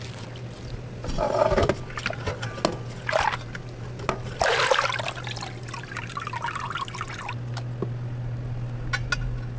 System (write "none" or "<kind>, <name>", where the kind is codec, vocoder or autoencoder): none